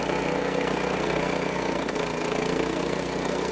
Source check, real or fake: fake